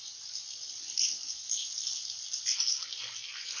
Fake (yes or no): no